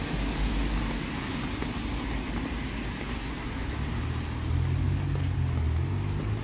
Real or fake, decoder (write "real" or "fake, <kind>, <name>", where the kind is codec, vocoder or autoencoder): real